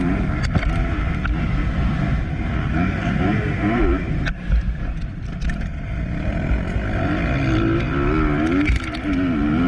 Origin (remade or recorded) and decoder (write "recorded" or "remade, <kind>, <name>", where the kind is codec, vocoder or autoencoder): recorded